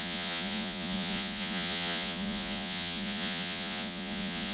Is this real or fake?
fake